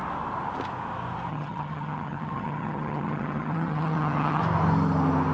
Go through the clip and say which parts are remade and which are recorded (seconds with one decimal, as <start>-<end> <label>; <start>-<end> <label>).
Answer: 0.0-1.3 recorded; 1.3-4.4 remade; 4.4-5.3 recorded